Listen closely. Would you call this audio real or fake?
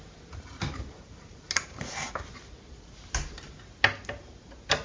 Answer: real